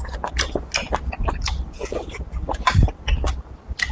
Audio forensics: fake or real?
real